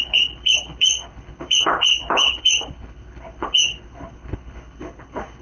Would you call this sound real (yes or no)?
no